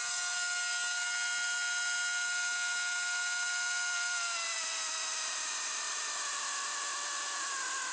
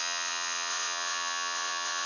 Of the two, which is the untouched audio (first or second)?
first